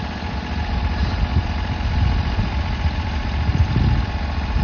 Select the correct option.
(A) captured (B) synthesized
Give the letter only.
A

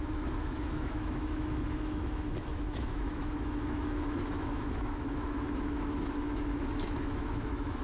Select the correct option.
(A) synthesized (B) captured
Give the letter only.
A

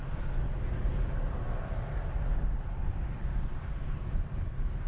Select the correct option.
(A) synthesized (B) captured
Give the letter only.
B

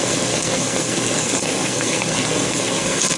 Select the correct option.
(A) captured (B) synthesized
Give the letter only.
B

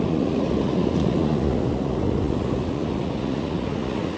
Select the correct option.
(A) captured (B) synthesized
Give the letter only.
B